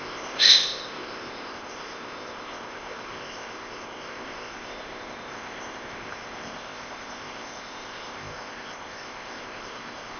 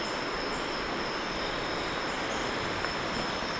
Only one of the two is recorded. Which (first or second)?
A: second